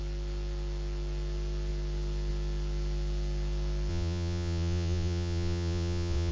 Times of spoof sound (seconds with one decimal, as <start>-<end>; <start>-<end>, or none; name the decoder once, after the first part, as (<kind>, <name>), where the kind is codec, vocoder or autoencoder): 3.9-6.3 (vocoder, Vocos)